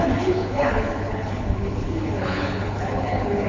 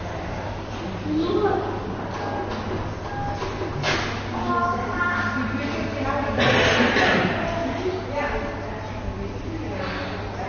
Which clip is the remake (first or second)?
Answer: first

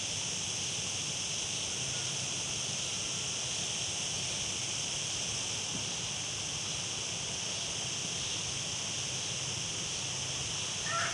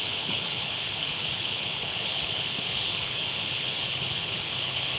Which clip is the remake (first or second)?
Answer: second